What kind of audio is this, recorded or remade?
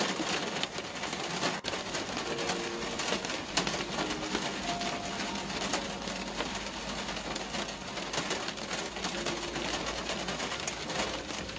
recorded